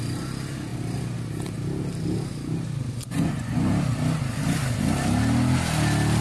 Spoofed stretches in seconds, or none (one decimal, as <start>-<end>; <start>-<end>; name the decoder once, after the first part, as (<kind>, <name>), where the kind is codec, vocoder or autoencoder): 3.0-3.7 (vocoder, Vocos)